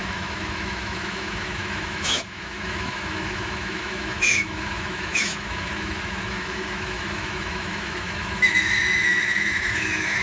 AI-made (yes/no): yes